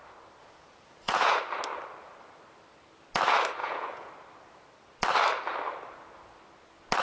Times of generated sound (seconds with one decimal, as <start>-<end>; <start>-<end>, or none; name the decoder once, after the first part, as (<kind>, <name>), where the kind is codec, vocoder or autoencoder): 0.4-1.4 (vocoder, Vocos); 3.6-4.1